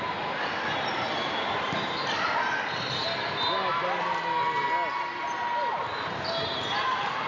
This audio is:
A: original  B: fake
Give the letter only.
A